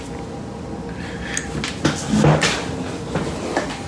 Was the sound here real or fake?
real